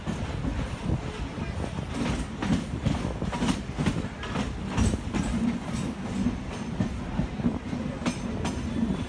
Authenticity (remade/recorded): recorded